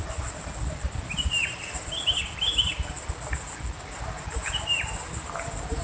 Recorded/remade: recorded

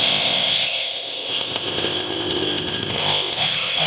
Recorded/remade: remade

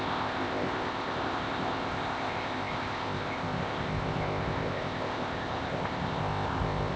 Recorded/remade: remade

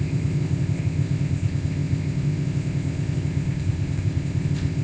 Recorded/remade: remade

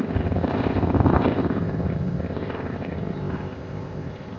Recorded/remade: remade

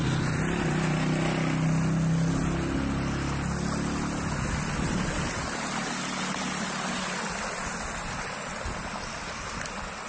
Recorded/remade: recorded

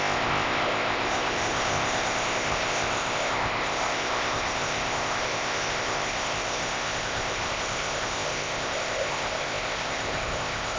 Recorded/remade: remade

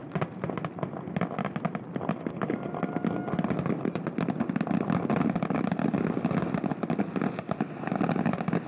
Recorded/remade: recorded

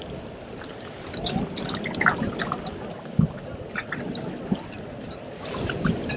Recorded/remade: recorded